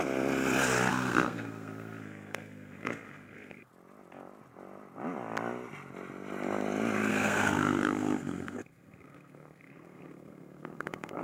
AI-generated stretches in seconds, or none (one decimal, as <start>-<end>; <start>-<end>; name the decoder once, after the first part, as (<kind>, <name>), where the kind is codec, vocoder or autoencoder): 0.9-3.7 (codec, SNAC); 7.1-11.2